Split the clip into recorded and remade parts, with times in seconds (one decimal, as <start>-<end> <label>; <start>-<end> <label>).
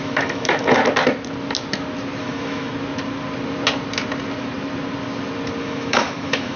0.0-0.8 remade; 0.8-2.2 recorded; 2.2-2.7 remade; 2.7-5.6 recorded; 5.6-6.6 remade